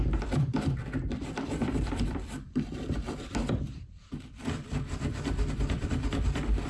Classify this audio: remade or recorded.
remade